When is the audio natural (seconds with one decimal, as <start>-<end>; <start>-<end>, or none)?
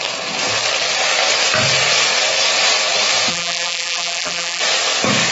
0.0-3.3; 4.6-5.3